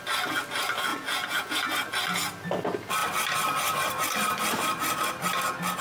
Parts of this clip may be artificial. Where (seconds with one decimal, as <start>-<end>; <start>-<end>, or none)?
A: 0.9-1.6